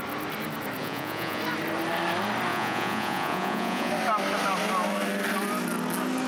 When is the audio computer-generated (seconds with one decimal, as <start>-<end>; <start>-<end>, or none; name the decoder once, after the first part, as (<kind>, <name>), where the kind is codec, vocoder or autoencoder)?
0.8-1.4 (vocoder, Vocos); 2.5-3.9